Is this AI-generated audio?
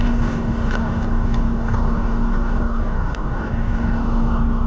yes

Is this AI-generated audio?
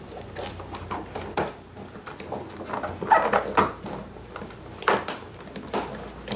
no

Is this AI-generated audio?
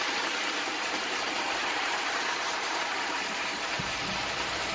yes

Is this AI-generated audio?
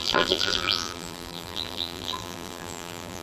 yes